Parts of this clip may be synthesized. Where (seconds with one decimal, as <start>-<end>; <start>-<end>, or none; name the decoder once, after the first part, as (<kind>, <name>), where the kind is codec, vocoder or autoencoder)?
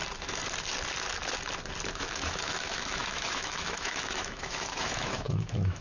1.9-5.8 (autoencoder, DAC-VAE)